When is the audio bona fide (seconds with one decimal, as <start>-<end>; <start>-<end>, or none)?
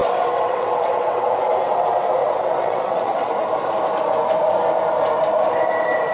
1.4-2.2; 3.3-6.1